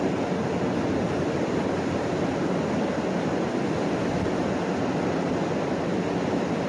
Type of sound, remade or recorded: recorded